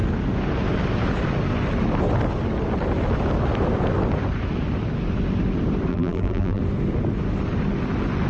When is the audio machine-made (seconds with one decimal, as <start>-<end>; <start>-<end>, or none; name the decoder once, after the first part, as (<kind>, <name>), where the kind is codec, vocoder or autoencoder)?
5.9-6.6 (vocoder, BigVGAN v2)